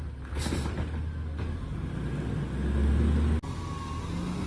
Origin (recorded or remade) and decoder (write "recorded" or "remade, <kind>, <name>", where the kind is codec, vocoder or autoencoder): recorded